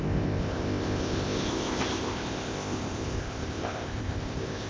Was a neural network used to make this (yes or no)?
yes